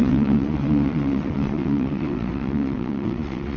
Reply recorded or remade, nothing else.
remade